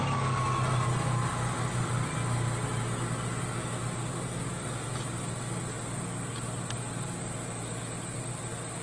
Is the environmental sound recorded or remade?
recorded